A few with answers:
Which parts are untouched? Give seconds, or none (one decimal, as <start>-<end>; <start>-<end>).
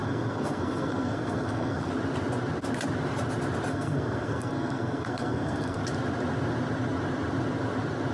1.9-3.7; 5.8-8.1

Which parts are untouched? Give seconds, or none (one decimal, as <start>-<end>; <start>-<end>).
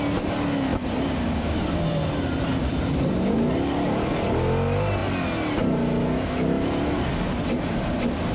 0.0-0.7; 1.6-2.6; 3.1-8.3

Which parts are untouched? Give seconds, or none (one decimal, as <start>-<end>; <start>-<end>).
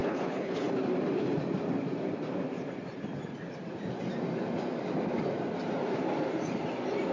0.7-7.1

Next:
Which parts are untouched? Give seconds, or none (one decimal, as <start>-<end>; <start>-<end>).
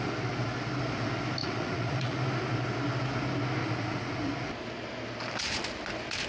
0.0-1.4; 2.2-3.6; 4.3-6.3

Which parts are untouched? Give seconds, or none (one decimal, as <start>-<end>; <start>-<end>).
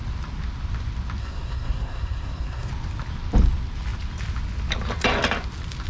0.0-1.2; 2.7-5.9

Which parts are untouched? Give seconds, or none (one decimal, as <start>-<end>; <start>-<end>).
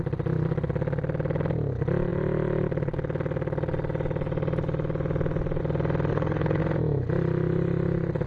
0.0-6.1; 6.6-8.3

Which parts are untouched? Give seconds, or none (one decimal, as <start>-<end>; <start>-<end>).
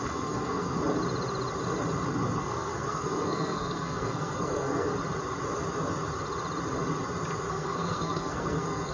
0.8-2.4; 4.9-7.5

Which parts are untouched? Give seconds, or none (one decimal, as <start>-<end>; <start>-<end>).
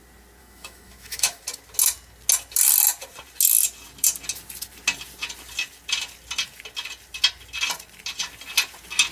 0.0-0.4; 1.4-9.1